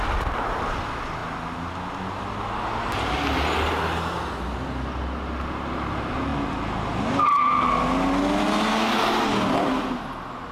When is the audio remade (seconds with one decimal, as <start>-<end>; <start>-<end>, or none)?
none